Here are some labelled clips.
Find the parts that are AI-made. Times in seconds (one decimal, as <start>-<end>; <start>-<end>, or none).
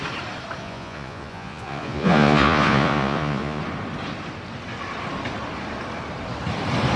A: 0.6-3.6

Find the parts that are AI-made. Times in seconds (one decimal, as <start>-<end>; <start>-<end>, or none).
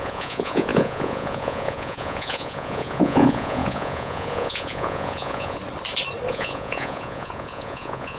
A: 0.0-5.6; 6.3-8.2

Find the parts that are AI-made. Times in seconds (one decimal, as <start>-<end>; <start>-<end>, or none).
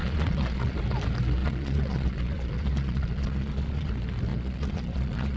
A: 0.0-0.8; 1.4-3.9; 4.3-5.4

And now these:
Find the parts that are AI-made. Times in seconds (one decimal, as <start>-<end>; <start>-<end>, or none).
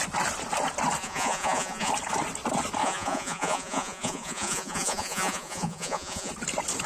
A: 1.0-1.9; 2.8-6.3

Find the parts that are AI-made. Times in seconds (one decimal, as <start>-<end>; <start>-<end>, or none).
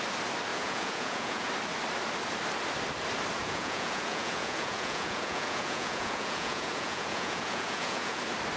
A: 0.5-1.5; 3.4-8.2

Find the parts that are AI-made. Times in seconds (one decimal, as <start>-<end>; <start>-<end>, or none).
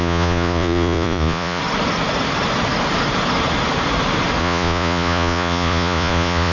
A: 0.0-1.6; 4.4-6.5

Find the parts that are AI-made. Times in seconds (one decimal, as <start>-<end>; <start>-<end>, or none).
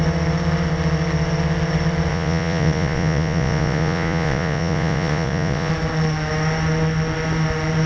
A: 2.1-5.7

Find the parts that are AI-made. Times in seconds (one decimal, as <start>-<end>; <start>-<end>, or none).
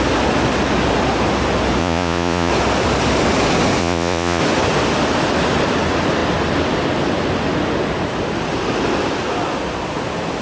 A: 1.8-2.5; 3.8-4.4